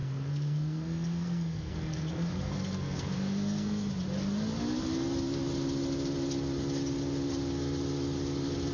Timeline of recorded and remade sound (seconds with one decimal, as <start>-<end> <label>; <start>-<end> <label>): 0.0-3.9 remade; 3.9-8.7 recorded